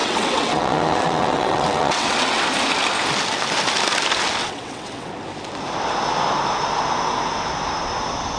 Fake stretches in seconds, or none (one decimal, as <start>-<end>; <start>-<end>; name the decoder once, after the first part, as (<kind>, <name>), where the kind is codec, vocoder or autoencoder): 0.0-2.4 (vocoder, WaveNeXt); 4.4-5.1